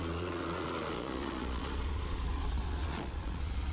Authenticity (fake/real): fake